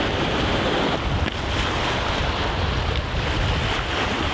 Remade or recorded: recorded